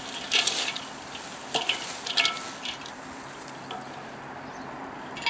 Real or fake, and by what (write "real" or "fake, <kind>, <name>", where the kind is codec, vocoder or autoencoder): real